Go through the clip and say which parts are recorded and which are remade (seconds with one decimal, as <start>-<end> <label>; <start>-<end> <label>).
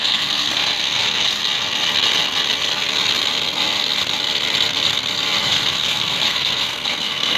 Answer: 0.0-1.4 remade; 1.4-5.4 recorded; 5.4-7.4 remade